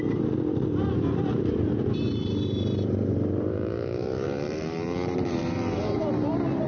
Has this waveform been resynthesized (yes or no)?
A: yes